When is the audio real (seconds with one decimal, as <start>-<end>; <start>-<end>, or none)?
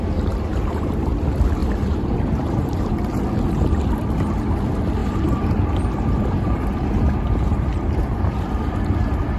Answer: 0.0-0.5; 1.1-1.6; 2.9-5.0; 8.8-9.4